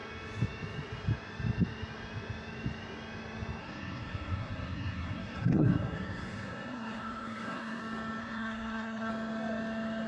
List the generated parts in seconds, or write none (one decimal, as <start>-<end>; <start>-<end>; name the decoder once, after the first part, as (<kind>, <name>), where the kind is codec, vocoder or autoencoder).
3.6-7.8 (codec, SNAC); 8.2-9.1